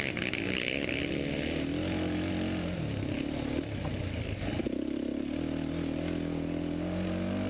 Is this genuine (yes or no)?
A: yes